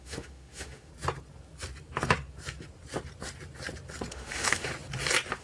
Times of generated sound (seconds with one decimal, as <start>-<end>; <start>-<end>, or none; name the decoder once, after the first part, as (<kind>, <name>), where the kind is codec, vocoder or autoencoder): 0.0-0.9 (autoencoder, DAC-VAE); 4.1-4.7